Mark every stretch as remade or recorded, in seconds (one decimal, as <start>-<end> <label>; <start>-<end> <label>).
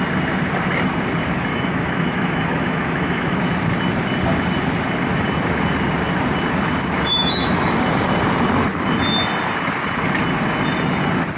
0.0-1.5 recorded; 1.5-3.4 remade; 3.4-7.1 recorded; 7.1-7.8 remade; 7.8-11.4 recorded